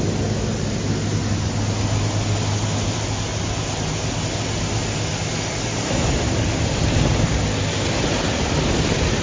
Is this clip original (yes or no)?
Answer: yes